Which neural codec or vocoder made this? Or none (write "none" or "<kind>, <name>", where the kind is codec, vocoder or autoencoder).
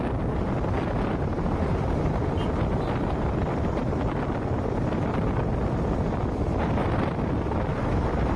none